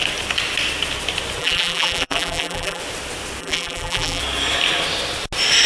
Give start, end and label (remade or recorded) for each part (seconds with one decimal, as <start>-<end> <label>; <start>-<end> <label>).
0.0-1.4 recorded; 1.4-2.8 remade; 2.8-3.4 recorded; 3.4-4.2 remade; 4.2-5.7 recorded